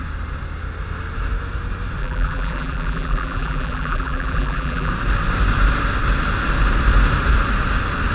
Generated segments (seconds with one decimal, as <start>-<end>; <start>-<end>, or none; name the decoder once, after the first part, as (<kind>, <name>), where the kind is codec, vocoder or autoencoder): 2.0-4.9 (vocoder, BigVGAN v2)